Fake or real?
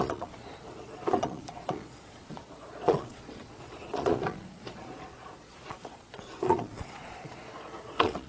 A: fake